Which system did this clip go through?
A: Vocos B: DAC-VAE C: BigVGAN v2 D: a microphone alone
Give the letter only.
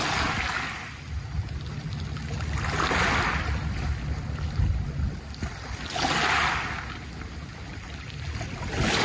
D